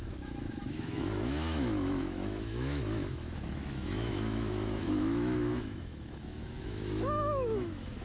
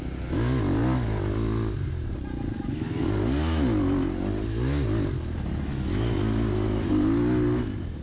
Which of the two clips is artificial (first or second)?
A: first